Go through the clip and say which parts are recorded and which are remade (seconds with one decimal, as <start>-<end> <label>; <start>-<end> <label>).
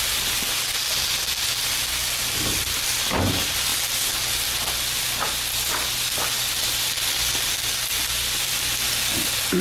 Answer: 0.0-9.6 recorded